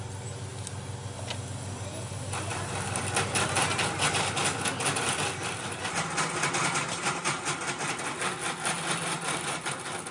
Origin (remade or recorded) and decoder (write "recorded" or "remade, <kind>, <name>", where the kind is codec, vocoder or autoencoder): recorded